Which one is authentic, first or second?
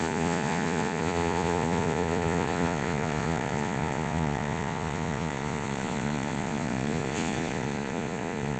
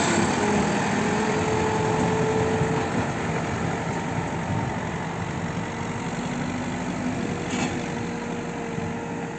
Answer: second